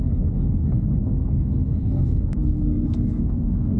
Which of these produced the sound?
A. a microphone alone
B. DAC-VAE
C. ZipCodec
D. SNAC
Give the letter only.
D